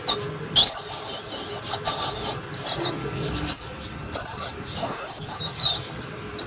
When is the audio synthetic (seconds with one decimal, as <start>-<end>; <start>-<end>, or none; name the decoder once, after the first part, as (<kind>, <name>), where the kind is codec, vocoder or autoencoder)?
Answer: 3.0-3.7 (codec, DAC); 4.8-5.4